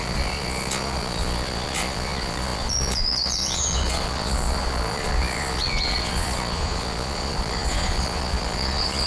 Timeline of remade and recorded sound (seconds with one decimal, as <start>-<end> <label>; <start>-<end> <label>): 0.0-9.1 remade